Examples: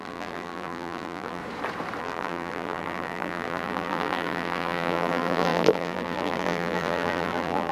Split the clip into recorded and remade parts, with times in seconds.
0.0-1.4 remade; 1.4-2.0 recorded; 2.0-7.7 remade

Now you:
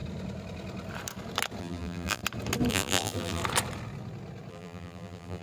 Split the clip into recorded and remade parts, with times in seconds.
0.0-1.6 recorded; 1.6-2.2 remade; 2.2-2.7 recorded; 2.7-3.4 remade; 3.4-4.5 recorded; 4.5-5.4 remade